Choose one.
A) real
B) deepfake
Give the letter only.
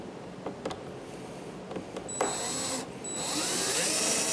A